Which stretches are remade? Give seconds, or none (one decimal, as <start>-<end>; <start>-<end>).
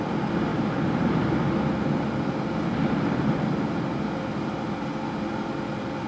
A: none